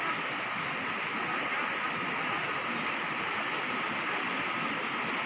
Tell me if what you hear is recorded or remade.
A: recorded